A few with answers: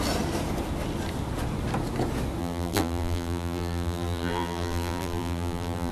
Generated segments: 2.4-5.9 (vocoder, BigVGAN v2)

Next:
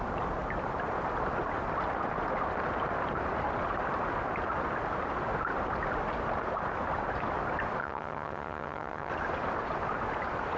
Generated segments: 7.8-9.1 (vocoder, HiFi-GAN)

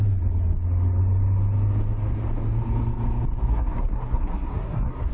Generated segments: 3.5-5.1 (codec, SNAC)

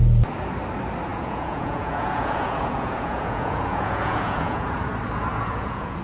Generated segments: 1.1-4.7 (vocoder, Vocos); 5.3-6.0

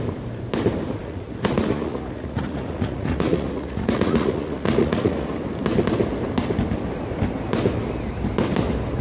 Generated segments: 1.0-5.3 (vocoder, Vocos)